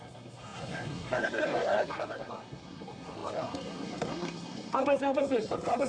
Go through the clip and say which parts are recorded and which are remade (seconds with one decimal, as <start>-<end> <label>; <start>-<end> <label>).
0.0-5.9 remade